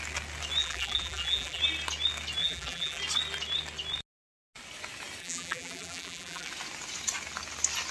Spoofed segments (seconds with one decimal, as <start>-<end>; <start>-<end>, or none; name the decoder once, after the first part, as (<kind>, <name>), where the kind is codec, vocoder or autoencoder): 0.6-1.6 (vocoder, BigVGAN v2); 2.4-3.0; 5.2-6.5